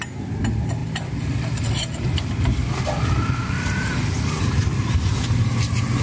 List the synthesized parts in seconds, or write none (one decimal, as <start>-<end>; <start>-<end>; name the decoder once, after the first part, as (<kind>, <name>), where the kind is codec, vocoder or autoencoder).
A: none